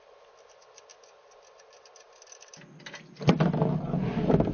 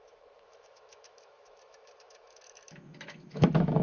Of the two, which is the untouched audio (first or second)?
first